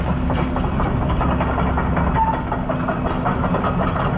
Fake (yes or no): no